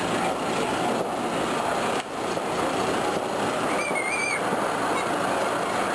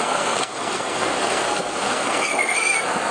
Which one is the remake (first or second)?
second